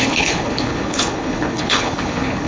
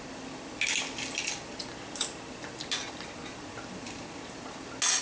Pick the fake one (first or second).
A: first